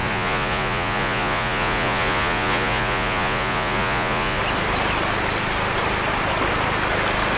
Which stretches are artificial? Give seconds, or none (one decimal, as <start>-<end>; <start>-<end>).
0.0-4.4